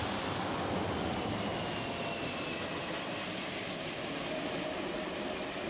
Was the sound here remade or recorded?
recorded